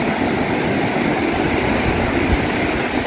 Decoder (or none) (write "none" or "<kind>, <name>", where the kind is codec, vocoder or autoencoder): none